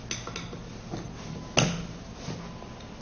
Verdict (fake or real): real